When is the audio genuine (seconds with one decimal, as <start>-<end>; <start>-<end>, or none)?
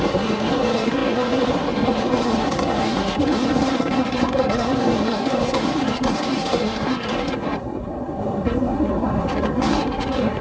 none